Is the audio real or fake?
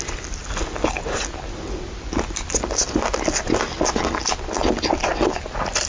real